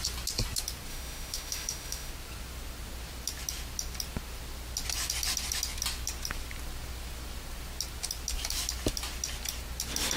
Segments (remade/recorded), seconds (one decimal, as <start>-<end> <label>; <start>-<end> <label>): 0.0-0.9 recorded; 0.9-2.1 remade; 2.1-10.2 recorded